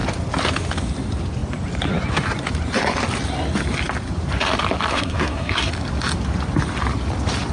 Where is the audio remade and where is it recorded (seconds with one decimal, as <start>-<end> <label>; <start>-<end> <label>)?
0.0-4.9 recorded; 4.9-5.7 remade; 5.7-7.5 recorded